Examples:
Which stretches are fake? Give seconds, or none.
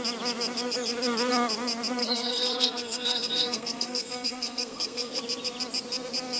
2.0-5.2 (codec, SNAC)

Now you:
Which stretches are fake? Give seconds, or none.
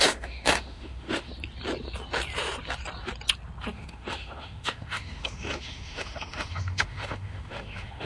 0.0-1.3 (autoencoder, DAC-VAE); 3.7-8.1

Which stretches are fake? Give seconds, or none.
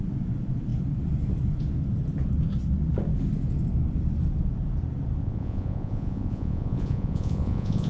5.2-7.9 (vocoder, Vocos)